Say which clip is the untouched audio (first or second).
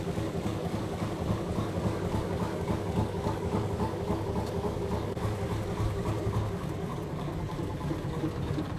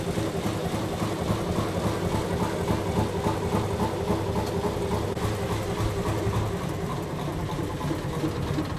second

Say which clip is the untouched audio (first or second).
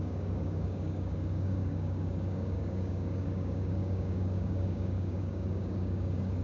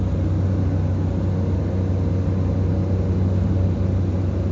second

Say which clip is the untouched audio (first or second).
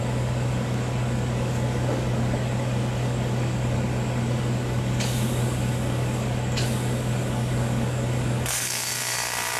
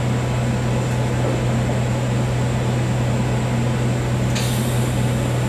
second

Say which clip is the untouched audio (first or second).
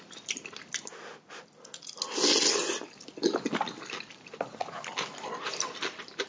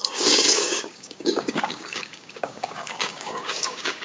first